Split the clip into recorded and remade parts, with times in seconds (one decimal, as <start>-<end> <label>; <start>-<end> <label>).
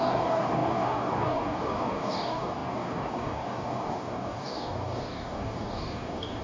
0.0-6.4 remade